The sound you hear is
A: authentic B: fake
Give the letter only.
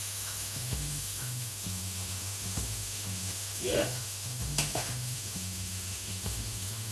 B